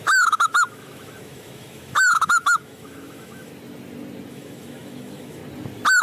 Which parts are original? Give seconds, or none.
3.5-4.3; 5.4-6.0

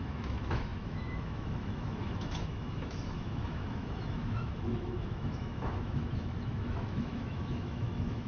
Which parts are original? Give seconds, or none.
none

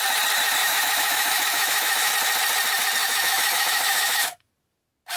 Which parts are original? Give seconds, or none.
0.0-0.6; 2.1-3.0; 4.5-5.2